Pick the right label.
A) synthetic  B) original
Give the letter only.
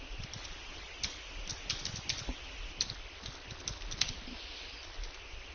B